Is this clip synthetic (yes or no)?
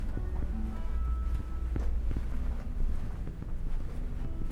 no